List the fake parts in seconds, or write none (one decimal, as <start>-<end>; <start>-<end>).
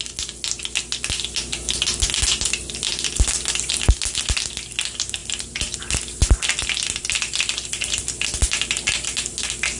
none